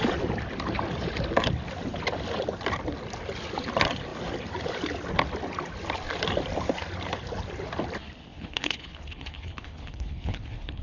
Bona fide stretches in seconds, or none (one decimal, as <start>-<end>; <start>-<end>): 0.0-8.3